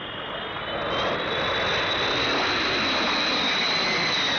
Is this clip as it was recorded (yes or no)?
yes